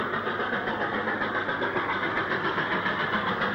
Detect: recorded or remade recorded